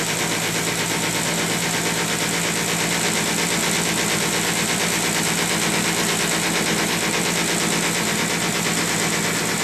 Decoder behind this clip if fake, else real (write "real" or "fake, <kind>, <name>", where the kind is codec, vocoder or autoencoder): real